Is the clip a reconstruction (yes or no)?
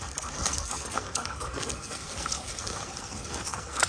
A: yes